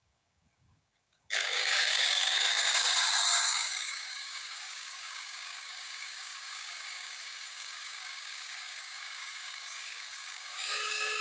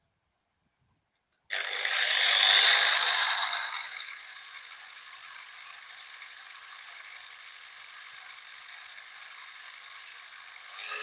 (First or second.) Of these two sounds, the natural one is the second